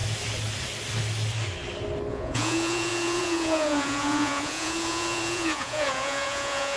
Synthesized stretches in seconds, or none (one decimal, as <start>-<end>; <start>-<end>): 2.1-6.8